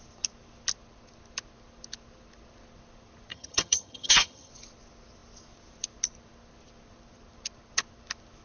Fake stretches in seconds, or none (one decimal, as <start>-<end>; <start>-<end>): 3.3-4.5